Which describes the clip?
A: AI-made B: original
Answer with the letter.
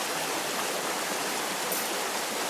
A